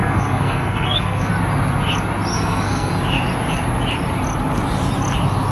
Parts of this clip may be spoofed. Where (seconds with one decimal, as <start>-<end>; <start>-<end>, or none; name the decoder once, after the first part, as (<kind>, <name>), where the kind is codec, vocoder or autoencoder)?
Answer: 0.0-1.3 (codec, SNAC); 2.3-2.9